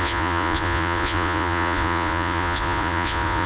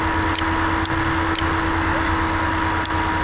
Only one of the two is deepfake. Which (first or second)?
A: first